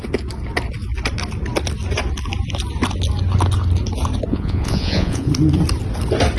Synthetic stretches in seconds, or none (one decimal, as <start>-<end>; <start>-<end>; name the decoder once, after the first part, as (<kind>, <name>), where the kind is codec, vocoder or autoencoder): 4.3-5.3 (vocoder, Vocos)